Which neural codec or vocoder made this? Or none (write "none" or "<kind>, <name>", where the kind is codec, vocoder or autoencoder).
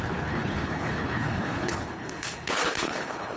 codec, HILCodec